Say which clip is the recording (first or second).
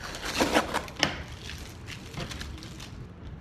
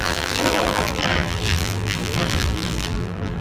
first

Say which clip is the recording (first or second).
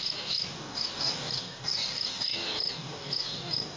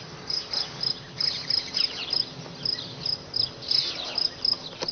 second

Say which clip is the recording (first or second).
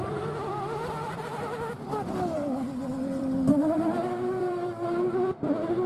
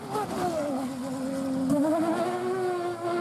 second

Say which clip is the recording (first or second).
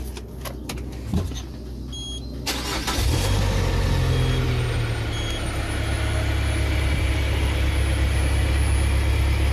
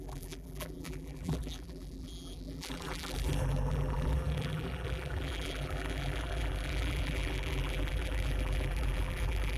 first